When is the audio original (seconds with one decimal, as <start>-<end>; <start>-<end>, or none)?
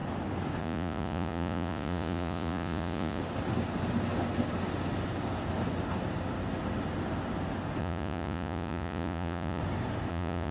0.0-0.6; 3.2-7.8; 9.6-10.1